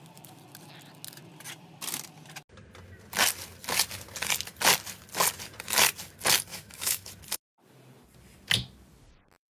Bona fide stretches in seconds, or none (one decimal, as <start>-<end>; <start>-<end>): 0.0-6.5; 7.1-9.5